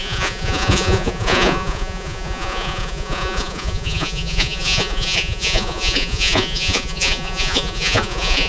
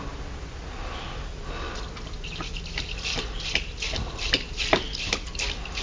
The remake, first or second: first